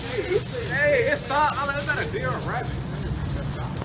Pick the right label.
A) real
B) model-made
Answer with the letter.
A